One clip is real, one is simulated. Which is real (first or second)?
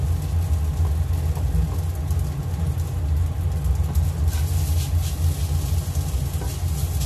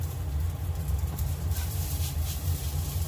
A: first